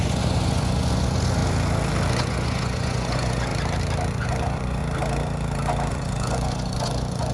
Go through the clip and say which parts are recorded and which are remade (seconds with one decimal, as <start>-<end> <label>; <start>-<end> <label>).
0.0-1.4 remade; 1.4-2.1 recorded; 2.1-3.5 remade; 3.5-4.1 recorded; 4.1-4.8 remade; 4.8-5.9 recorded; 5.9-7.3 remade